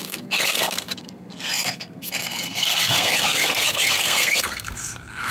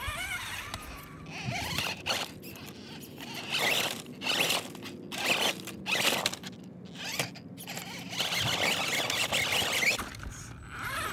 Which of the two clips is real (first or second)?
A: second